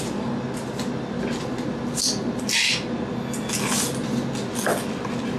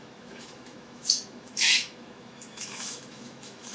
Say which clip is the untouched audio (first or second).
first